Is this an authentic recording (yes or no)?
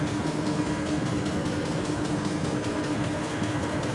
no